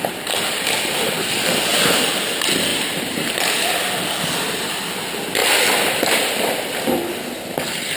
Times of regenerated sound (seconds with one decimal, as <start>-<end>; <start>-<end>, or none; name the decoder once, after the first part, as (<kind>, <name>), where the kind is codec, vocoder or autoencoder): 2.7-3.5 (vocoder, BigVGAN v2)